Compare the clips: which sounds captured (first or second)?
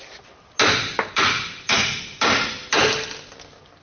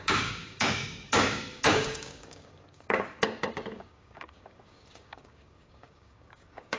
first